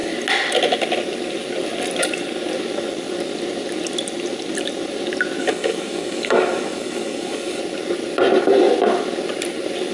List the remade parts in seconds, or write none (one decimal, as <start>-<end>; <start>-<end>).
5.4-7.6